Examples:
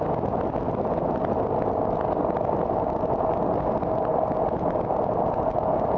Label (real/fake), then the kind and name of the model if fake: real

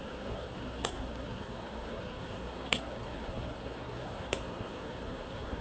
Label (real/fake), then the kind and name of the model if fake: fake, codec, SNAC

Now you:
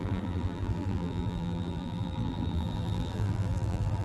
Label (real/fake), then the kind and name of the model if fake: fake, vocoder, BigVGAN v2